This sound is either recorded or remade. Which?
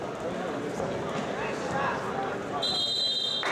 recorded